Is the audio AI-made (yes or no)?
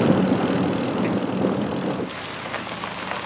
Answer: no